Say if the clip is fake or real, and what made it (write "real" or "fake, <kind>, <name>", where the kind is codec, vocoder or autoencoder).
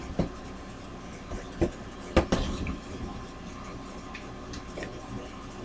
real